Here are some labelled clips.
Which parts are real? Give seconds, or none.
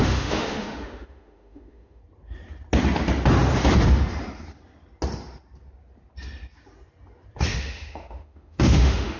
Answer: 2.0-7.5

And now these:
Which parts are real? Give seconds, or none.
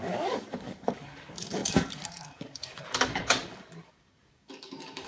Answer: none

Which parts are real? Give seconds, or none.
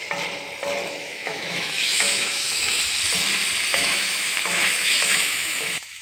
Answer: 0.0-0.8; 2.8-3.7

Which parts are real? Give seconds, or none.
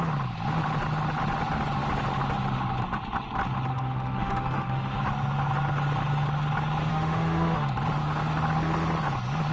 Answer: 0.0-3.7; 5.0-6.9; 7.7-9.5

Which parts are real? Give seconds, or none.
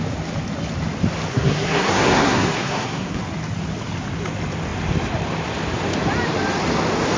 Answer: 0.0-1.3; 3.2-7.2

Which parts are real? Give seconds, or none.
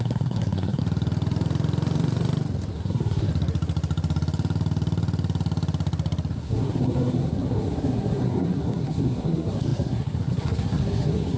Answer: 0.8-2.7; 3.3-6.3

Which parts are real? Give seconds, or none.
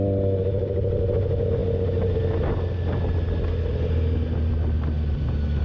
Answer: 0.0-5.6